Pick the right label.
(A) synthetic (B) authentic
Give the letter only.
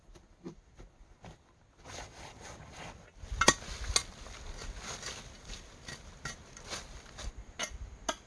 B